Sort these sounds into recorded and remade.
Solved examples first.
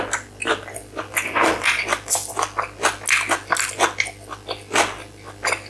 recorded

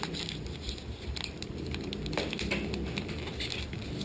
recorded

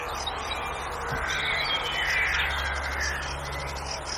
recorded